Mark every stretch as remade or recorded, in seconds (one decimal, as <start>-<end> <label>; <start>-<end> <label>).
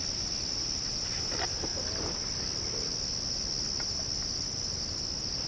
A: 0.0-5.5 recorded